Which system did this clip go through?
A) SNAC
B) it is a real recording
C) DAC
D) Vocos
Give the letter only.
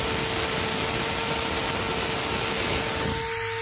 B